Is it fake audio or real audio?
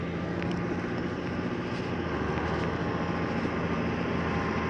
real